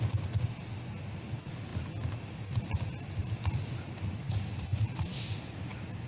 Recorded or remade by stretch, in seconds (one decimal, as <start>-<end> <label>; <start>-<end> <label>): 0.0-6.1 recorded